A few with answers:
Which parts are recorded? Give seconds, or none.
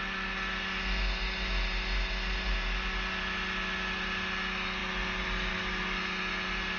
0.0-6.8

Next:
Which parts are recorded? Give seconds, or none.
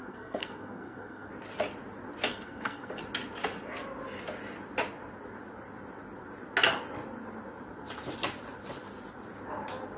1.3-2.3; 3.0-10.0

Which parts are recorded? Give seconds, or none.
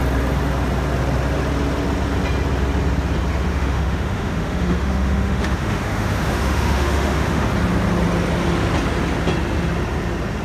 0.0-3.5; 7.5-10.4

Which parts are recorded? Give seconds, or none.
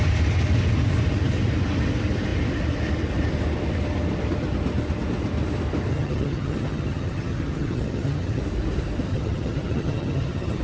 0.0-5.9; 8.4-9.1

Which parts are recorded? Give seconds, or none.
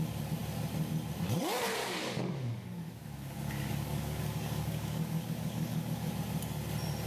0.0-1.8; 6.1-7.1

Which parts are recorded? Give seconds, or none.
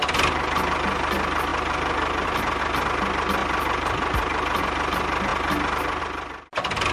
0.0-6.9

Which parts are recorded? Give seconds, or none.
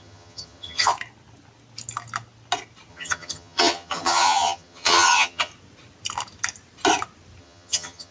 0.9-2.9; 5.5-7.4